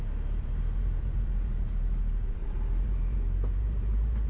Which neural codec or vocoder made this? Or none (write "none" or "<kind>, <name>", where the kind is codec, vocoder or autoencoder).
vocoder, BigVGAN v2